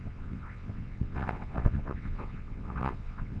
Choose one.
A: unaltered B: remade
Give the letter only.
B